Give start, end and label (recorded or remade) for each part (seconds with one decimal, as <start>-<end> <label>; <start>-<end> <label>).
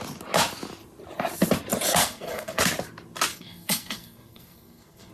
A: 0.0-2.0 recorded; 2.0-2.6 remade; 2.6-3.3 recorded; 3.3-5.1 remade